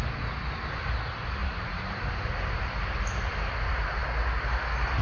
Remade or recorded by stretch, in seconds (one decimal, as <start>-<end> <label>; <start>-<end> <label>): 0.0-1.4 recorded; 1.4-2.3 remade; 2.3-5.0 recorded